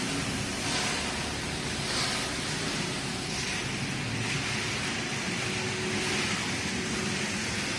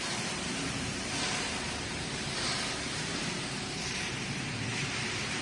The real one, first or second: first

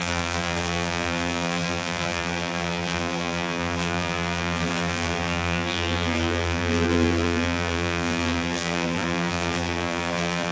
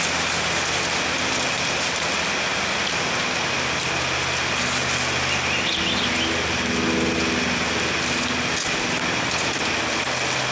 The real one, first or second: second